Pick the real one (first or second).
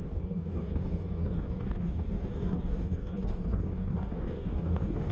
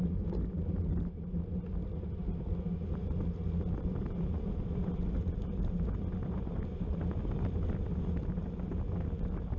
second